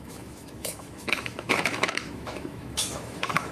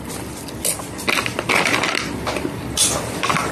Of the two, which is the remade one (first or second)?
first